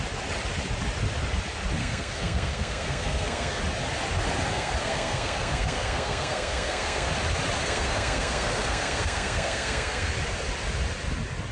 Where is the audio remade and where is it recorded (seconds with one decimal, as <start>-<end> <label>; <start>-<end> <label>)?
0.0-1.8 recorded; 1.8-3.6 remade; 3.6-4.5 recorded; 4.5-7.1 remade; 7.1-7.6 recorded; 7.6-10.1 remade; 10.1-11.5 recorded